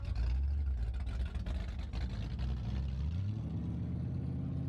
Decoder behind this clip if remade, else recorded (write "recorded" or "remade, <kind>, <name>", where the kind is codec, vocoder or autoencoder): recorded